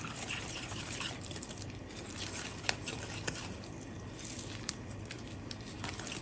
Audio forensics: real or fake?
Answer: real